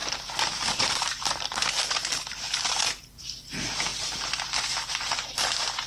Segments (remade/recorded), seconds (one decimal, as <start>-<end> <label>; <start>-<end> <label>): 0.0-3.5 remade; 3.5-5.9 recorded